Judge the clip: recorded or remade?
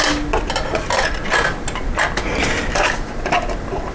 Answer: recorded